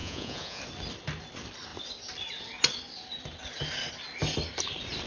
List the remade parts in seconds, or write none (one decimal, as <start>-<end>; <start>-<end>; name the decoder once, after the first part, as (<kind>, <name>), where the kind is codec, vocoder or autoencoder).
0.0-0.6 (vocoder, Vocos)